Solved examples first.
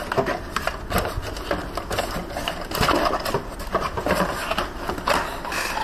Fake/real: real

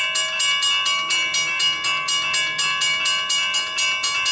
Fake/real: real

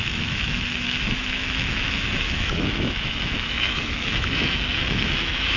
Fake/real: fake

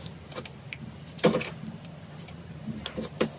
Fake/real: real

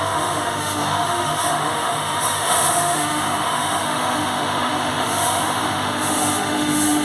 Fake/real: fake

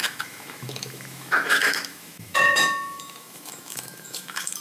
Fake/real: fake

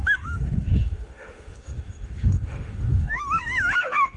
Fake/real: fake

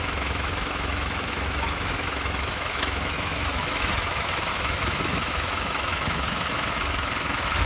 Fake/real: fake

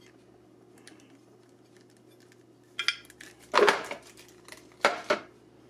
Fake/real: real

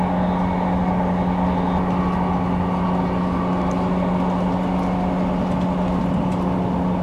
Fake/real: real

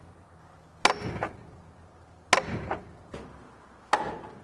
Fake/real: real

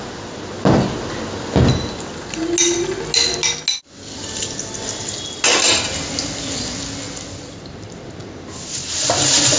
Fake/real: real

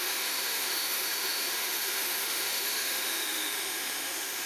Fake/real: fake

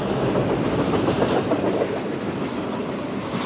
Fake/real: real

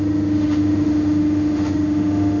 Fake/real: fake